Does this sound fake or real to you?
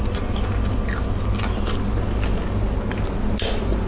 real